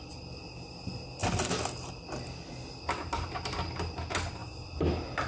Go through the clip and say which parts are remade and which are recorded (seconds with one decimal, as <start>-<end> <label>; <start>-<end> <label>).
0.0-5.3 recorded